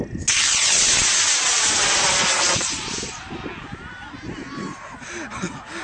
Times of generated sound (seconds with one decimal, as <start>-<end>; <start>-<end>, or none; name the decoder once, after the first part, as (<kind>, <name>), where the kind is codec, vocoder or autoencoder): none